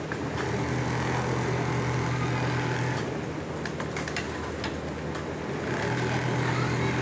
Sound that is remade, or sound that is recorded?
recorded